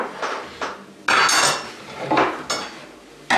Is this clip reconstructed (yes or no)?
no